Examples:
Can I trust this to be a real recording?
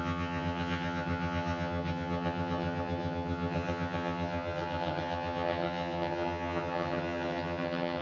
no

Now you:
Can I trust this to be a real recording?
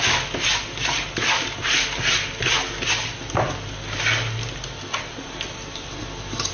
yes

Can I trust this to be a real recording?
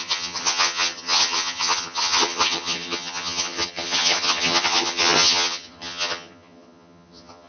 no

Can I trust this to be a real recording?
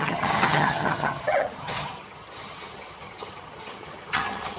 no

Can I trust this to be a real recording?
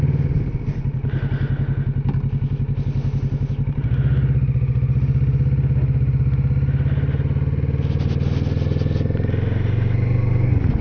yes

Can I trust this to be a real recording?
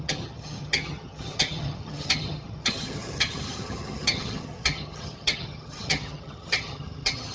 no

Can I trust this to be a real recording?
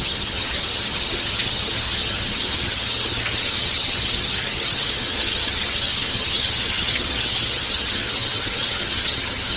no